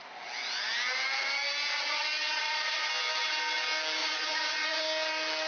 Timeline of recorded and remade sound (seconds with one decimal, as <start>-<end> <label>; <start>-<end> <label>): 0.0-1.8 recorded; 1.8-2.9 remade; 2.9-4.0 recorded; 4.0-4.8 remade; 4.8-5.5 recorded